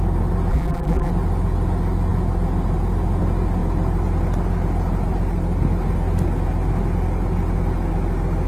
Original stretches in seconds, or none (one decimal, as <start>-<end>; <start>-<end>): 0.0-0.5; 1.1-8.5